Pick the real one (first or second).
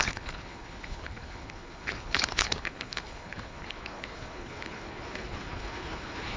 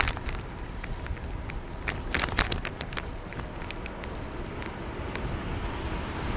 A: second